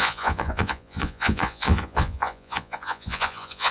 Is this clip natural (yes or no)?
no